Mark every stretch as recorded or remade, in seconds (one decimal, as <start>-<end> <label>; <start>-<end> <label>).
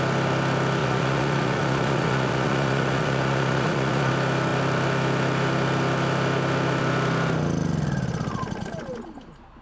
0.0-0.8 recorded; 0.8-4.1 remade; 4.1-9.6 recorded